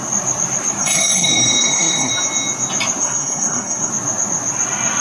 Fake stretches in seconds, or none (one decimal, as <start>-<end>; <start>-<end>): 0.8-2.1; 3.0-3.9